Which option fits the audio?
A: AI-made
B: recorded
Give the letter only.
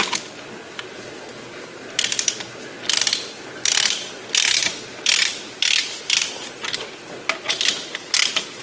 B